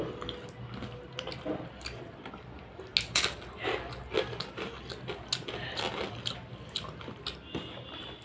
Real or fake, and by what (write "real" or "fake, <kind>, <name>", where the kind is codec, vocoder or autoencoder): real